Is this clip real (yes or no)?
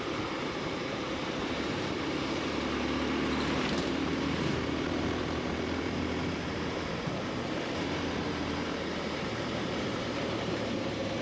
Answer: no